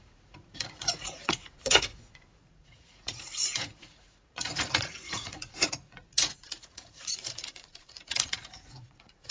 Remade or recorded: remade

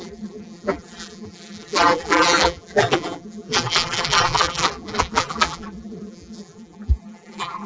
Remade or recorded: remade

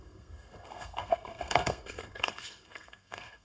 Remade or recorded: remade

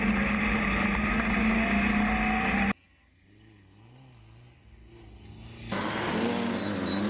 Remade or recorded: recorded